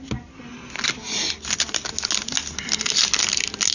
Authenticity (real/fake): real